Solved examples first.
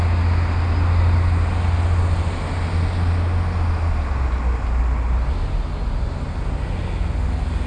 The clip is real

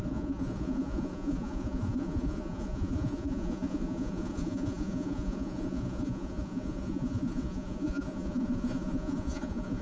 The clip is fake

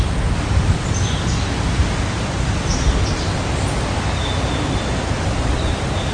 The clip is real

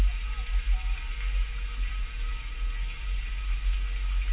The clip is real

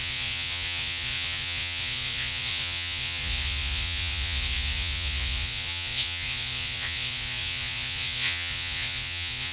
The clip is fake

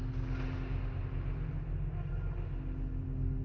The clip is real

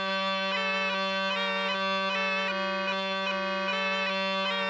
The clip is real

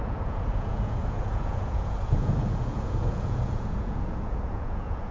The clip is fake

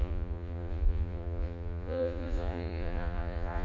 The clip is fake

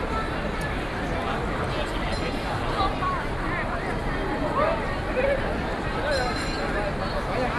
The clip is real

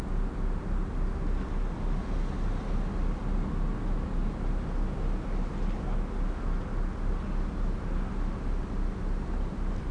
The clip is real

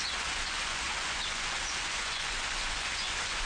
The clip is fake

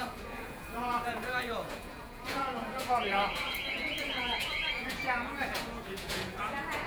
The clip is fake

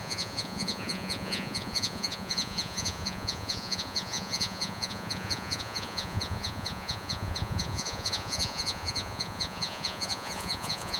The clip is fake